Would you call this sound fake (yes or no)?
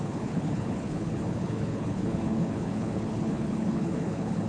yes